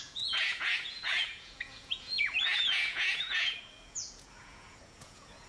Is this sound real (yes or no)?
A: no